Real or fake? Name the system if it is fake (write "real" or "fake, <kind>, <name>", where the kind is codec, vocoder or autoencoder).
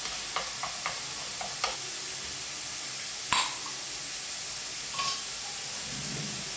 real